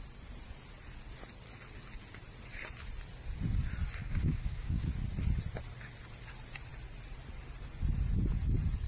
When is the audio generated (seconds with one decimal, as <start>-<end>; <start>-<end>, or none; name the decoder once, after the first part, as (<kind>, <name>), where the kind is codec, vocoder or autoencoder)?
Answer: 4.0-4.9 (codec, DAC)